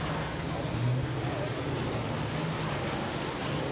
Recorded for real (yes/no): yes